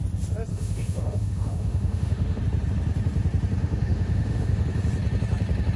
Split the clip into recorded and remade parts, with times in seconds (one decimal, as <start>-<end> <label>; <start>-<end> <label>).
0.0-0.5 recorded; 0.5-2.4 remade; 2.4-3.6 recorded; 3.6-4.6 remade; 4.6-5.8 recorded

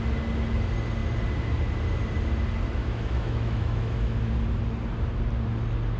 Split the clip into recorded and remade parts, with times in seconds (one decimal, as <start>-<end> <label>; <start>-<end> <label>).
0.0-2.8 recorded; 2.8-4.3 remade; 4.3-6.0 recorded

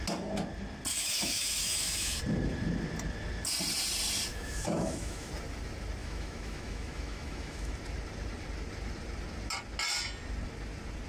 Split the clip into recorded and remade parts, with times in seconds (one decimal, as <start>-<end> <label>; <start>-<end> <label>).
0.0-0.9 recorded; 0.9-2.2 remade; 2.2-4.3 recorded; 4.3-5.3 remade; 5.3-6.0 recorded; 6.0-7.7 remade; 7.7-11.1 recorded

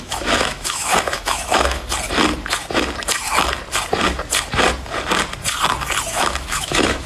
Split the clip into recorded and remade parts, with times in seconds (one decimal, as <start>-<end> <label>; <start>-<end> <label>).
0.0-1.8 remade; 1.8-6.1 recorded; 6.1-7.1 remade

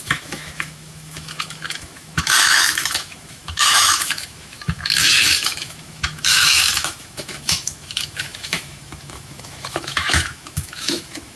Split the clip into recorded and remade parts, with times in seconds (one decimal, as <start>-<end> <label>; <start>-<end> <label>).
0.0-11.4 remade

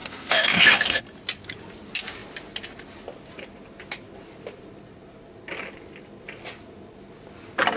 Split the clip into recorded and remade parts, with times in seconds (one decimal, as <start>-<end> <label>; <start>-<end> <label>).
0.0-1.0 remade; 1.0-7.8 recorded

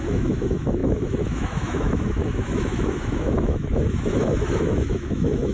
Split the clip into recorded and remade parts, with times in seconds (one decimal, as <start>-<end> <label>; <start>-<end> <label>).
0.0-5.5 remade